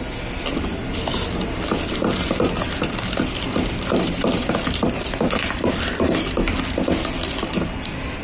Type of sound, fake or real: real